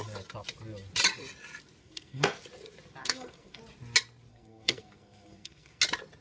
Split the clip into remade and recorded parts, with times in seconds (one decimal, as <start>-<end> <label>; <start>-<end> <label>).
0.0-1.8 recorded; 1.8-2.4 remade; 2.4-3.0 recorded; 3.0-3.6 remade; 3.6-4.3 recorded; 4.3-5.8 remade; 5.8-6.2 recorded